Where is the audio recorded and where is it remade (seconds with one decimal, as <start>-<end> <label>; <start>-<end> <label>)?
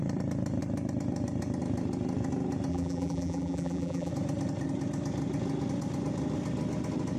0.0-2.7 recorded; 2.7-4.1 remade; 4.1-7.2 recorded